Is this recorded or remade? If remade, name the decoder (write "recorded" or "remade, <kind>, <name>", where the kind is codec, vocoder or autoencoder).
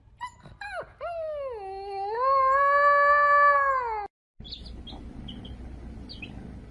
recorded